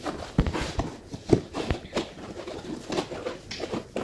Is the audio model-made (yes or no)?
no